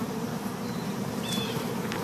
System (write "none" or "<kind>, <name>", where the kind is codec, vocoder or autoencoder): vocoder, BigVGAN v2